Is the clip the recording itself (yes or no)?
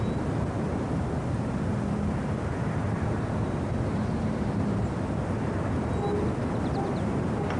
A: yes